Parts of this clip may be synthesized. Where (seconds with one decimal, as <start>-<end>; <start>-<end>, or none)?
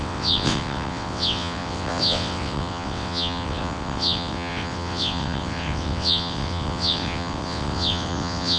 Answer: 0.0-8.6